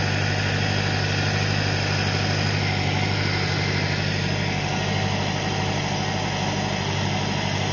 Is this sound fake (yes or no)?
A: no